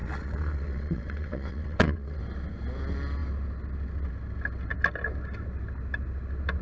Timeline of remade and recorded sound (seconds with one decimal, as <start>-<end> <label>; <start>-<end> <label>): 0.0-2.2 remade; 2.2-6.6 recorded